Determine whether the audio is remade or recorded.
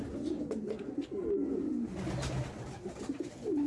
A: recorded